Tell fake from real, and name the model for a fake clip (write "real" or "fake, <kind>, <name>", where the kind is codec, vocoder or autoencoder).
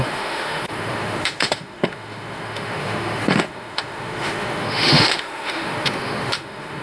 fake, autoencoder, DAC-VAE